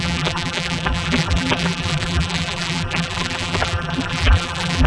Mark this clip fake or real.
fake